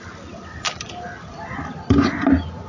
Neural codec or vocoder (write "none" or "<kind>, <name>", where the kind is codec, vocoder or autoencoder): none